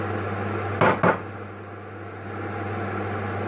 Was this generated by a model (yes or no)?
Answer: no